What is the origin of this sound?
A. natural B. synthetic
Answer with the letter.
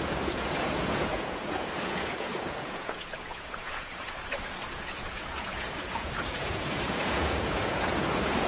B